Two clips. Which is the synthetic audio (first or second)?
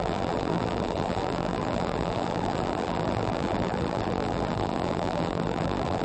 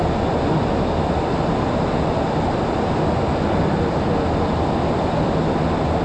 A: first